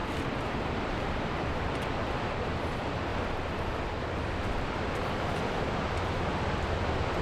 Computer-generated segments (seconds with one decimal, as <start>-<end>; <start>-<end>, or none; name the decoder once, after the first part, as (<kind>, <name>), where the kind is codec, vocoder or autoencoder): 0.0-2.1 (vocoder, BigVGAN v2); 3.1-6.6

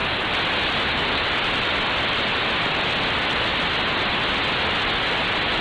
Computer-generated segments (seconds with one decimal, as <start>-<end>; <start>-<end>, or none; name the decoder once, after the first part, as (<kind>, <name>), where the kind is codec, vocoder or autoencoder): none